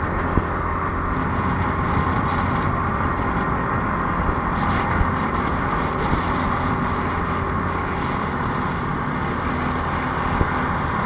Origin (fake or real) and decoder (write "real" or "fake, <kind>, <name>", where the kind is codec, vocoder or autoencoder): real